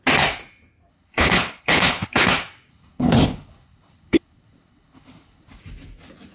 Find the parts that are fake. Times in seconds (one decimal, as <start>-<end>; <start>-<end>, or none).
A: 0.9-2.3; 2.7-5.6